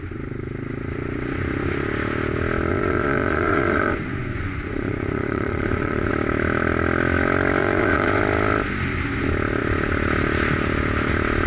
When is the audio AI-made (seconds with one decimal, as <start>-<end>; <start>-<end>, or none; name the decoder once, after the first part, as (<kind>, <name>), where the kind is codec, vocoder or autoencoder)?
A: 2.7-6.1 (vocoder, Vocos); 7.6-8.2